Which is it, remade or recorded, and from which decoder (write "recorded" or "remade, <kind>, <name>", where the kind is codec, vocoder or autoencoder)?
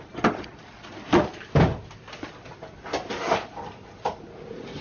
recorded